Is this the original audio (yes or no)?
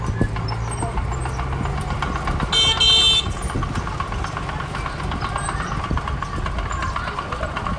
yes